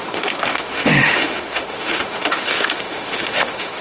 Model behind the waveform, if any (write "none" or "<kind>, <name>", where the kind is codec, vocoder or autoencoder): autoencoder, DAC-VAE